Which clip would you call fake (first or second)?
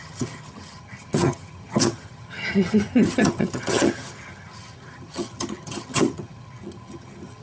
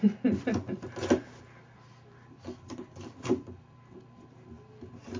first